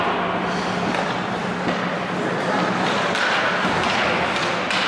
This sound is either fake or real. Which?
real